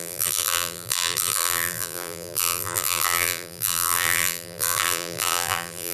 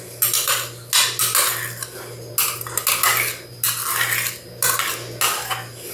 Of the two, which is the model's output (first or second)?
first